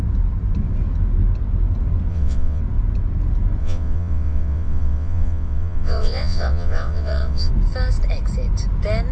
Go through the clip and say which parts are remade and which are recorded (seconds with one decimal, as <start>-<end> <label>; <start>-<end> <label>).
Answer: 0.0-2.1 recorded; 2.1-2.6 remade; 2.6-3.6 recorded; 3.6-7.5 remade; 7.5-9.1 recorded